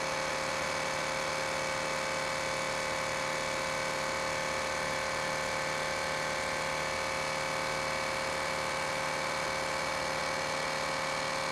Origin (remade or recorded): recorded